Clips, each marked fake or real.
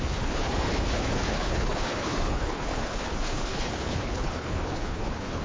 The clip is fake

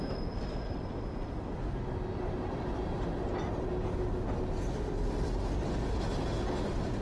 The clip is real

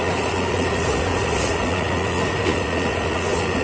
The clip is fake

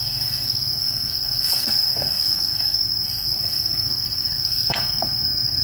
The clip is fake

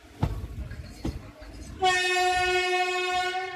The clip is real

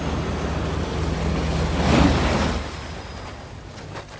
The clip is real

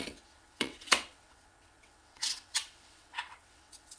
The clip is fake